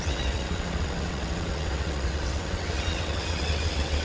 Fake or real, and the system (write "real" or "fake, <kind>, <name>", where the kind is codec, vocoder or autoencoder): fake, vocoder, WaveNeXt